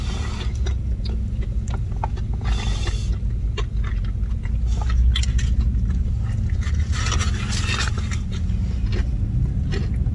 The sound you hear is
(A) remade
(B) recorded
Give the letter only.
B